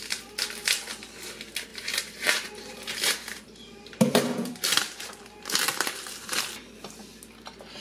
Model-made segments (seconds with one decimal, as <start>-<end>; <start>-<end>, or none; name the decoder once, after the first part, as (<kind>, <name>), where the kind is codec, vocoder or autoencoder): 1.7-6.4 (vocoder, BigVGAN v2)